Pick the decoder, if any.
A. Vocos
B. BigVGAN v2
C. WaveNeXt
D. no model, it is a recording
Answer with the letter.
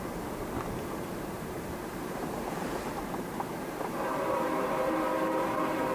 B